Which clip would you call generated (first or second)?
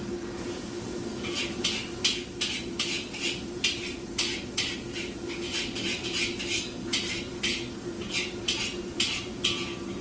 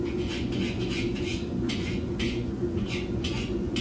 second